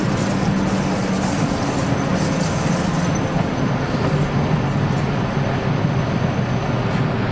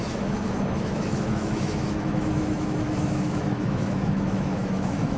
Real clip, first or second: first